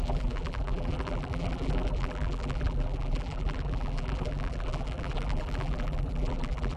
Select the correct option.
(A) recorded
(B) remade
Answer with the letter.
B